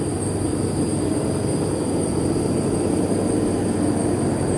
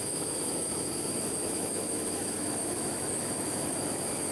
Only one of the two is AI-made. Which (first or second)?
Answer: second